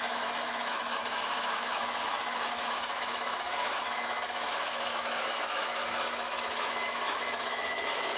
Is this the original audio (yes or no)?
no